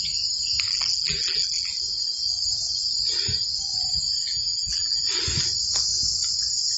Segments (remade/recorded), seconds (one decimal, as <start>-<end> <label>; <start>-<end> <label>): 0.0-0.7 recorded; 0.7-1.8 remade; 1.8-4.3 recorded; 4.3-5.0 remade; 5.0-6.8 recorded